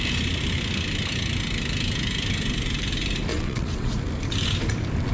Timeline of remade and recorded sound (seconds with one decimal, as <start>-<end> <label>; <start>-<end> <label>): 0.0-3.3 recorded; 3.3-3.9 remade; 3.9-5.1 recorded